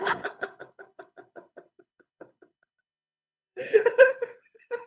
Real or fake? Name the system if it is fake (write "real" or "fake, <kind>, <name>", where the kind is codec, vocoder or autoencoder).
fake, codec, HILCodec